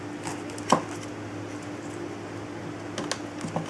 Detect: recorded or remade recorded